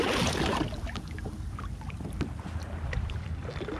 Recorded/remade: recorded